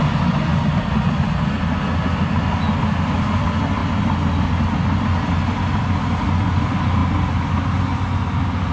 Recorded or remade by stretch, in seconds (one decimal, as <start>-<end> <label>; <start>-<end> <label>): 0.0-8.7 recorded